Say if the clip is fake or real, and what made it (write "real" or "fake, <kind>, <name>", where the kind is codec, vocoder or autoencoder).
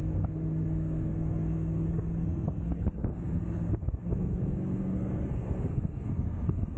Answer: fake, codec, SNAC